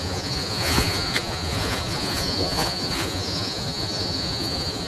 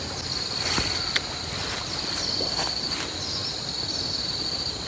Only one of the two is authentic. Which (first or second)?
second